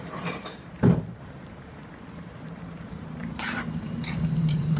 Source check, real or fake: fake